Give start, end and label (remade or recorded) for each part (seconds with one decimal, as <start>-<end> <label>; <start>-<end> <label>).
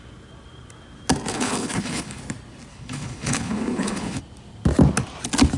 0.0-1.3 recorded; 1.3-2.2 remade; 2.2-2.7 recorded; 2.7-4.2 remade; 4.2-5.6 recorded